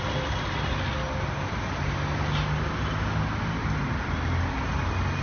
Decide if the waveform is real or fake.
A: real